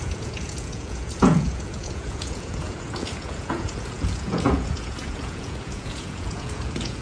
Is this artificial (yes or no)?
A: yes